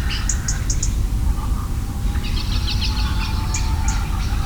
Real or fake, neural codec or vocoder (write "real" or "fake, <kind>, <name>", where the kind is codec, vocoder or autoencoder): real